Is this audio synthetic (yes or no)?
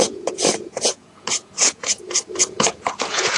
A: yes